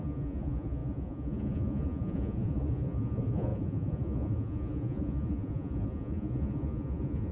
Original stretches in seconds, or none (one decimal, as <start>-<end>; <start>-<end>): none